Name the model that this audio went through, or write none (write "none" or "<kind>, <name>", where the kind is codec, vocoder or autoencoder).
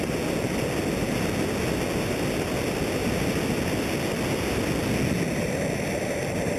none